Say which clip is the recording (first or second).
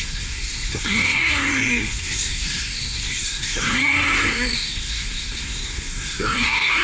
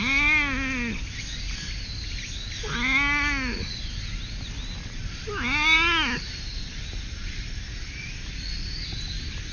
second